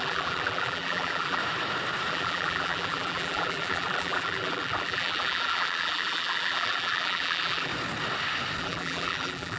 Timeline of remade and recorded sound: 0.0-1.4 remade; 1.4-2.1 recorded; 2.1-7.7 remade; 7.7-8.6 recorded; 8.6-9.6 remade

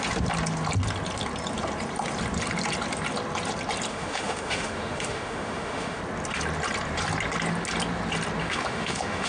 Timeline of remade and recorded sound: 0.0-3.9 recorded; 3.9-6.0 remade; 6.0-8.4 recorded; 8.4-9.3 remade